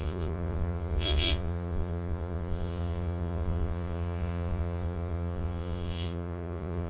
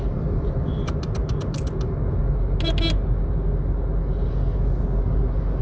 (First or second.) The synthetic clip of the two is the first